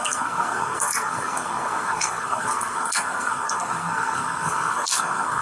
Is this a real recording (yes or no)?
no